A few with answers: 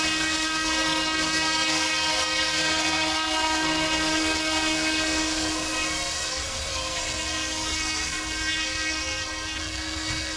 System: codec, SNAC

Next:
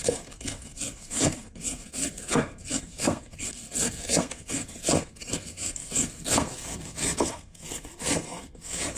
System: codec, SNAC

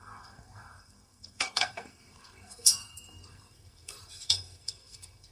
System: codec, SNAC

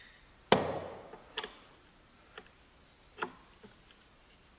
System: none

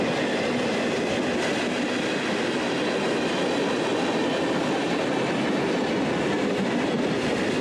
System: none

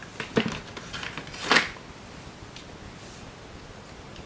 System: none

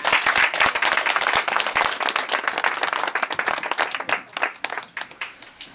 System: none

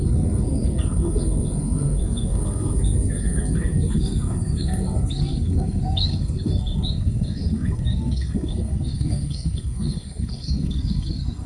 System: codec, SNAC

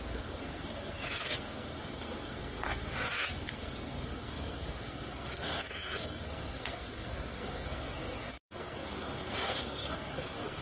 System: codec, SNAC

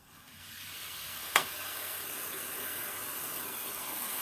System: codec, SNAC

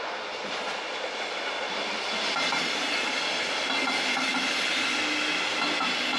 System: none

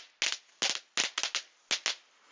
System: none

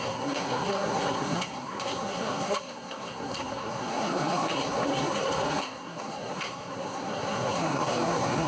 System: codec, SNAC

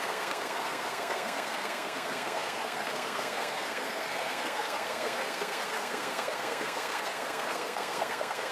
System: codec, SNAC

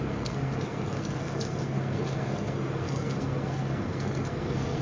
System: codec, SNAC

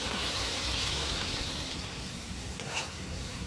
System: codec, SNAC